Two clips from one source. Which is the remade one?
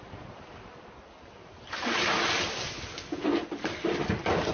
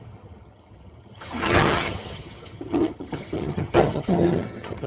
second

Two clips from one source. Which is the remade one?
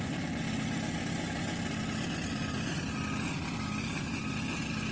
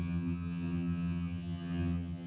second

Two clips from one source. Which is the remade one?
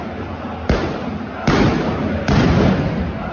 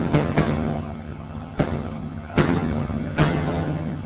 second